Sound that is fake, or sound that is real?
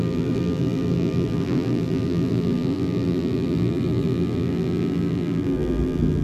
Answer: fake